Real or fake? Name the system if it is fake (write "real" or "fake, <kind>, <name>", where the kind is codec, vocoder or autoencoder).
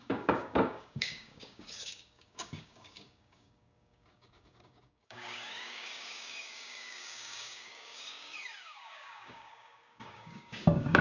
fake, codec, DAC